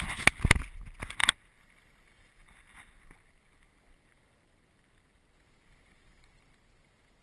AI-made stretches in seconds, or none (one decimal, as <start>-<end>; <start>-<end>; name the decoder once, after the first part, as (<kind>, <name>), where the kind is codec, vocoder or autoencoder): none